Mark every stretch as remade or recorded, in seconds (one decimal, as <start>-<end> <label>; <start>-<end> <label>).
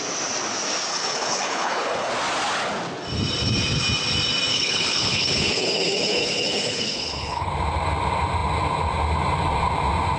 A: 0.0-0.9 recorded; 0.9-2.1 remade; 2.1-4.5 recorded; 4.5-7.5 remade; 7.5-10.2 recorded